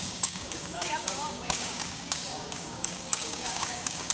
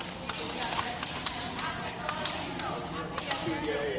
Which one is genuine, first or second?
second